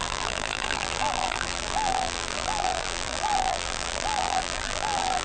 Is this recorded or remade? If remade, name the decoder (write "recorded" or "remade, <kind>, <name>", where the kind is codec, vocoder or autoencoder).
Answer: remade, vocoder, BigVGAN v2